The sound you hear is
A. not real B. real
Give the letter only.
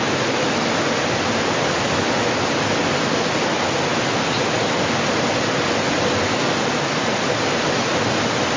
B